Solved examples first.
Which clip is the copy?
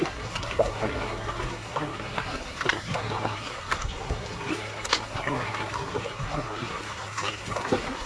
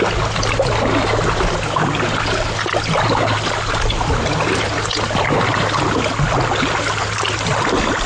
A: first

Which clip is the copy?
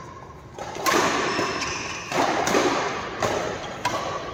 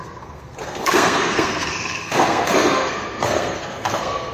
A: second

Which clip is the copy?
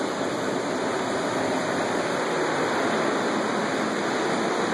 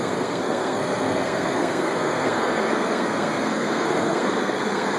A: second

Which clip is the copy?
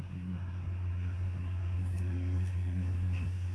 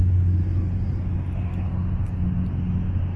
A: first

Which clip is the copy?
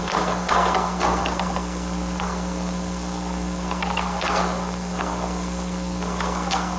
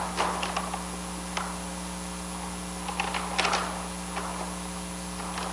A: first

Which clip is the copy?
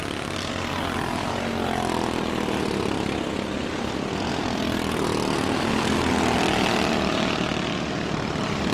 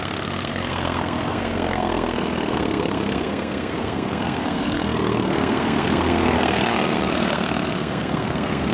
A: second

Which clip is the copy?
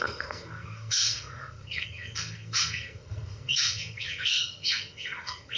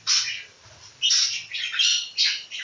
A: first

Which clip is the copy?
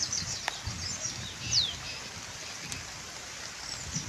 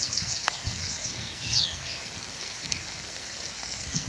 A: second